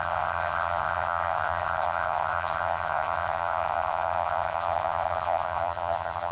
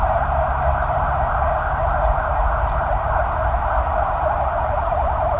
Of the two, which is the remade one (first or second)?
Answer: first